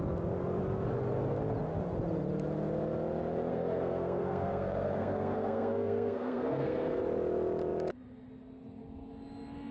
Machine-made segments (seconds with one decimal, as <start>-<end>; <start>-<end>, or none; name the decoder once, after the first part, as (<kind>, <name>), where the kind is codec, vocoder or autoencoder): 3.5-7.0 (codec, SNAC)